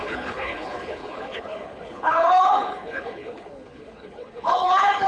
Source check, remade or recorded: remade